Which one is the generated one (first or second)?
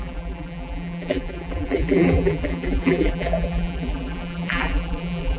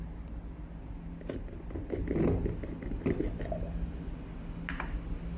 first